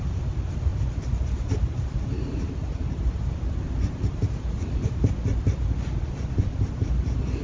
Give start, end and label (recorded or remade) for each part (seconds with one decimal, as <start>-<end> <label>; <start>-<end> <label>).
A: 0.0-0.7 recorded; 0.7-5.1 remade; 5.1-7.4 recorded